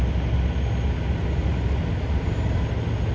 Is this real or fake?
real